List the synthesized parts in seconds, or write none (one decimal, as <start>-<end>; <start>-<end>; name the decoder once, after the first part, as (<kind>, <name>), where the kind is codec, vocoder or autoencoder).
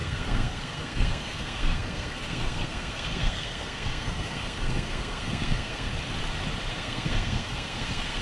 0.0-5.9 (codec, SNAC); 6.7-8.2